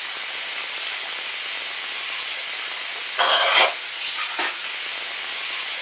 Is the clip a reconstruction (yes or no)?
no